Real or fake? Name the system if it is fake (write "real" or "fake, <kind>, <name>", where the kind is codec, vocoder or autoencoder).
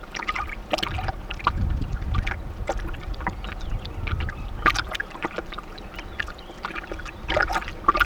fake, vocoder, BigVGAN v2